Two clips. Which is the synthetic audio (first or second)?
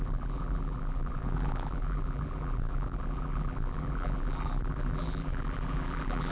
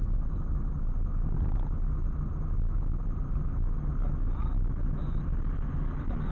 first